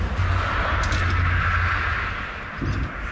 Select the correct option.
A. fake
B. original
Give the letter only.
B